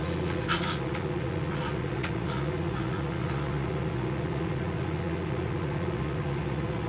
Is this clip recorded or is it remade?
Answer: remade